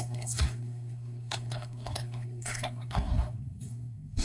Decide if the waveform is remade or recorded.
remade